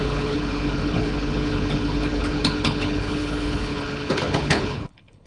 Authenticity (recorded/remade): remade